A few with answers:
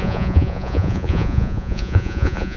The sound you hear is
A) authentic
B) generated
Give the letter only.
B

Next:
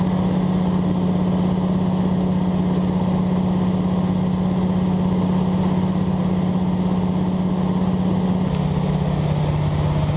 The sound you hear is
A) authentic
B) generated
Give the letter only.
A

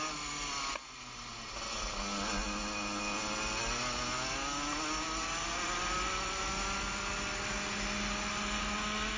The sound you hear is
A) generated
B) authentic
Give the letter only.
B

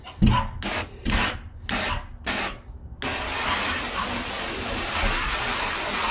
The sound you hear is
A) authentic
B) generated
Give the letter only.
A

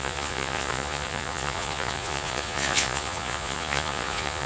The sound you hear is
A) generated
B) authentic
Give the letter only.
A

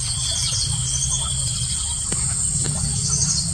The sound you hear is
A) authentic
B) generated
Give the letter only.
A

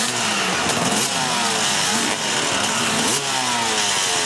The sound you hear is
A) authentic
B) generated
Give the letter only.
A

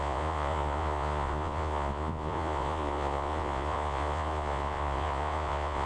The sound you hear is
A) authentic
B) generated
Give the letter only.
B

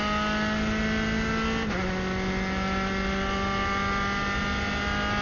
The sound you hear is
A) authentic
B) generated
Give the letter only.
A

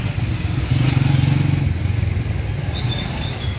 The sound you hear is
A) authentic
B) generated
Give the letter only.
A